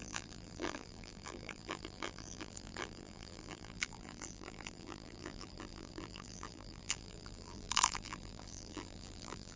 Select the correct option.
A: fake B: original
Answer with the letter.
A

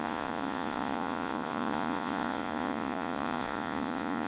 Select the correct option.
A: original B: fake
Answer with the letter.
B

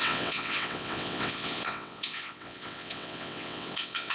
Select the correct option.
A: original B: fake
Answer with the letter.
B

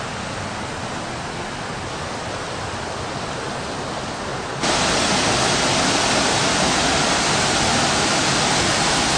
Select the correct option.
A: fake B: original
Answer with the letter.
B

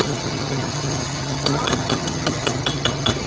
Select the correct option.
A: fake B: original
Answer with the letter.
A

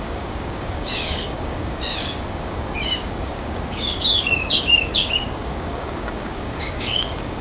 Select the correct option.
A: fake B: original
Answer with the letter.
A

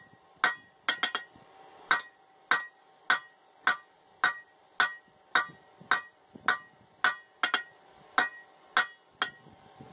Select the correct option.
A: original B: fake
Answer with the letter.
A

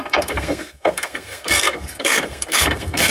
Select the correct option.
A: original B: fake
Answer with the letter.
B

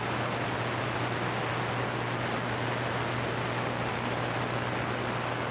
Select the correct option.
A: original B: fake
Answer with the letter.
A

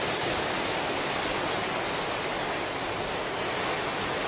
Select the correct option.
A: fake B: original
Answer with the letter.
B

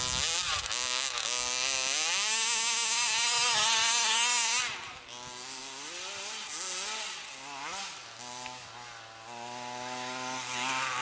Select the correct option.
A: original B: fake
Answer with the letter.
A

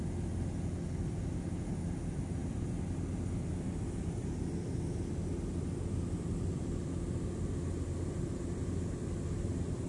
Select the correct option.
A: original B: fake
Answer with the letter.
A